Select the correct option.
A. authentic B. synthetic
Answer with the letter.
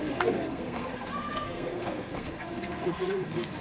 B